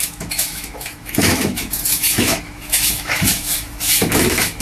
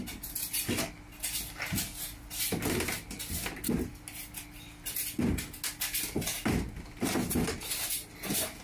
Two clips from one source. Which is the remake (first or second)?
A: first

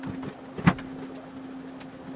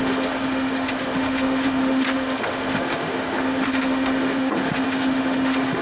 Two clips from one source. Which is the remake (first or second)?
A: second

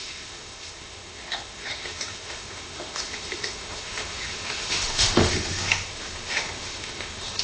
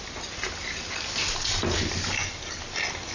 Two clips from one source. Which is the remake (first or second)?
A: first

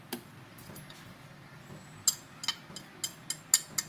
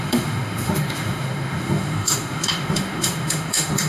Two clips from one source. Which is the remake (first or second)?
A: second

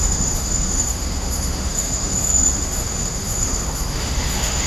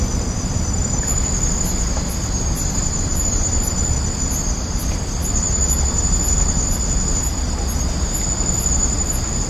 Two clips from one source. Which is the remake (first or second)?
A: first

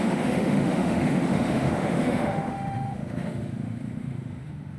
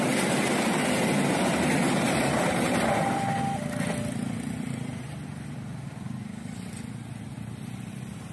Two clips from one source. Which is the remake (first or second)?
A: first